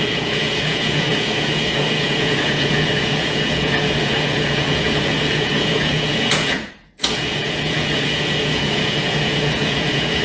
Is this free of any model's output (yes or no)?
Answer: no